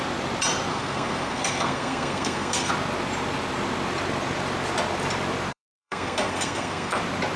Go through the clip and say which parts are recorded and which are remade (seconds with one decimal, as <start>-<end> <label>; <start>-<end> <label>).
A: 0.0-0.7 recorded; 0.7-2.7 remade; 2.7-5.5 recorded; 5.5-7.0 remade; 7.0-7.4 recorded